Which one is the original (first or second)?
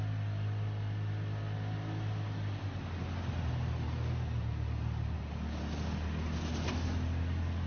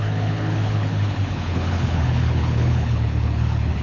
first